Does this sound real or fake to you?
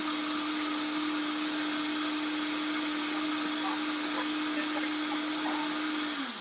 real